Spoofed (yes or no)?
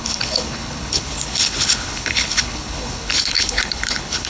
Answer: yes